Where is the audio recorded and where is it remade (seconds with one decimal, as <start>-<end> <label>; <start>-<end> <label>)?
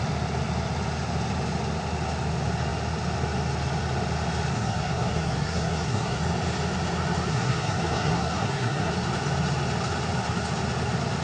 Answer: 0.0-4.5 recorded; 4.5-6.2 remade; 6.2-7.3 recorded; 7.3-8.9 remade; 8.9-11.2 recorded